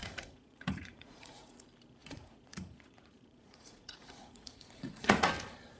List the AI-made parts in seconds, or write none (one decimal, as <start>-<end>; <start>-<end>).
0.0-1.6; 2.0-5.3